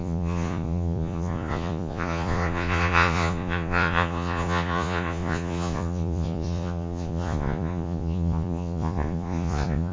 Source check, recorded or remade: remade